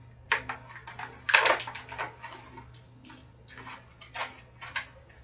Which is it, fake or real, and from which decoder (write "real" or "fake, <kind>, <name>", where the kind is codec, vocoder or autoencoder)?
real